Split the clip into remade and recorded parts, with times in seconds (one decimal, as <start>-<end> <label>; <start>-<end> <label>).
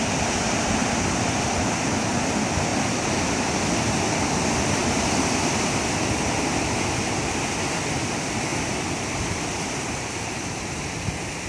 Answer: 0.0-2.7 recorded; 2.7-3.5 remade; 3.5-4.8 recorded; 4.8-6.5 remade; 6.5-8.5 recorded; 8.5-10.2 remade; 10.2-11.5 recorded